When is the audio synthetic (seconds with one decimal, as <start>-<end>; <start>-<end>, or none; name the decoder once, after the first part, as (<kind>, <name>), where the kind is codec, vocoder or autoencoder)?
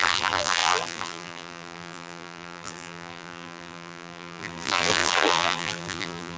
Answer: 0.0-6.4 (vocoder, BigVGAN v2)